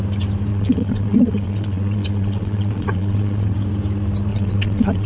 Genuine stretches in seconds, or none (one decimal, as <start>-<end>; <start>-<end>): 0.0-0.5; 3.6-4.3